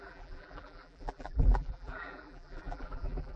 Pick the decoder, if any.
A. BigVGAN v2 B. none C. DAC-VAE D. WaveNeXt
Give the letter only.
A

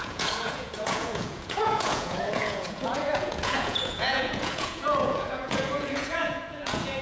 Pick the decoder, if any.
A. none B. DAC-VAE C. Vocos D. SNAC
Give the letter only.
C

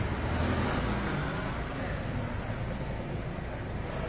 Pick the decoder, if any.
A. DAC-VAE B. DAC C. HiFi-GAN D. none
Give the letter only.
D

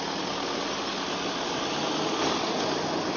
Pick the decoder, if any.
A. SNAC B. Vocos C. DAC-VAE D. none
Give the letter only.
D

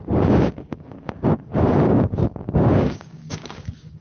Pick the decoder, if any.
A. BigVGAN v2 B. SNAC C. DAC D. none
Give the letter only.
C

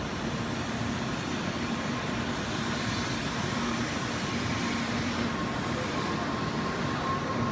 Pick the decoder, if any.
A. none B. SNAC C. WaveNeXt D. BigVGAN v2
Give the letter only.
D